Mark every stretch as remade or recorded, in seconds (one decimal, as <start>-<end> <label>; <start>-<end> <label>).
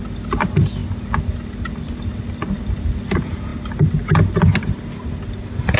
0.0-5.8 recorded